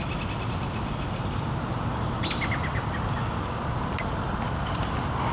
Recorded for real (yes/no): yes